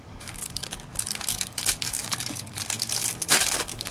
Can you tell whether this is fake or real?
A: fake